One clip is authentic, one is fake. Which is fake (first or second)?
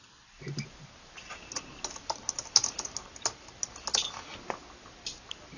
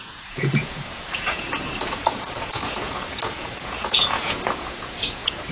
second